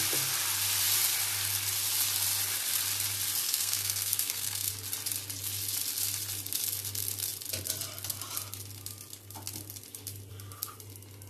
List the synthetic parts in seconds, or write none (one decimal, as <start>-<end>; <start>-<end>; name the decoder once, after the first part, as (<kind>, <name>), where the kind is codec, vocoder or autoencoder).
3.4-4.7 (codec, SNAC)